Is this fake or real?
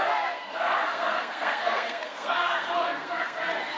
fake